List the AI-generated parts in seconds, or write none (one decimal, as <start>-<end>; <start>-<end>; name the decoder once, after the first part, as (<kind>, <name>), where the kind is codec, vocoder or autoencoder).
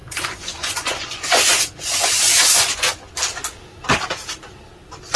0.0-3.1 (vocoder, Vocos)